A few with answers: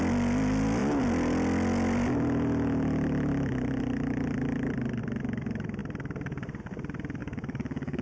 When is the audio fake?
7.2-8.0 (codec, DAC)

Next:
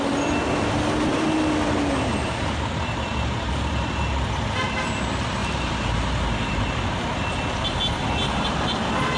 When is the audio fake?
2.2-3.5 (vocoder, BigVGAN v2); 5.4-6.7

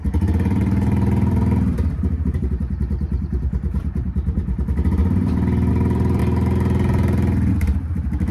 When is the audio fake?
0.0-5.0 (vocoder, BigVGAN v2); 5.7-6.2; 7.5-8.3

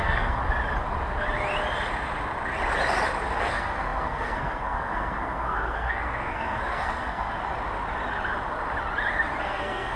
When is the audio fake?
0.0-0.4 (codec, SNAC); 3.4-7.4; 9.4-10.0

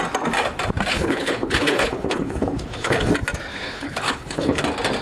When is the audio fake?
0.9-3.1 (codec, HILCodec); 3.5-4.6

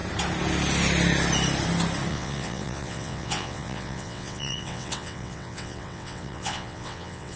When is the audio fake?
2.1-7.4 (vocoder, WaveNeXt)

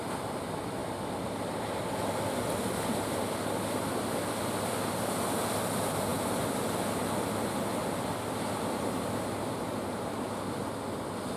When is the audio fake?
none

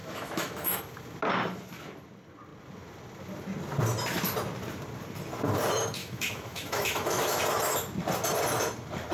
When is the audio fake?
0.0-0.8 (autoencoder, DAC-VAE); 6.0-7.4